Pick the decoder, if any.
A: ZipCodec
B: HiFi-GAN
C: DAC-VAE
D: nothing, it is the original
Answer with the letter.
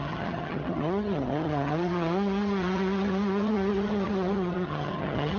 B